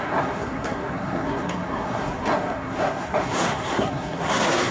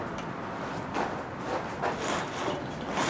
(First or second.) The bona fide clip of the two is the second